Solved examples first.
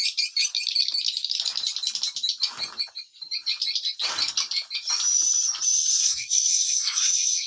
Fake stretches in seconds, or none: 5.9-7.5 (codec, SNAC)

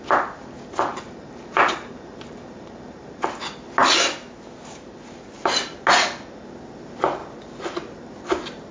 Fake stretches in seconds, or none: 0.9-3.3 (vocoder, BigVGAN v2)

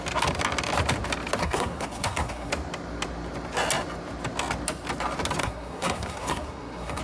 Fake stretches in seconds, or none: 1.4-2.5 (codec, SNAC); 5.4-7.0

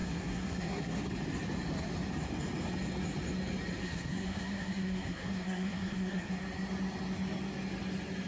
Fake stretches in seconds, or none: 0.0-1.0 (codec, SNAC); 3.8-6.3

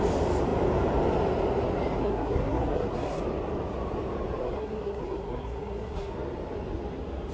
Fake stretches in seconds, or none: 2.0-3.2 (codec, SNAC); 4.4-6.1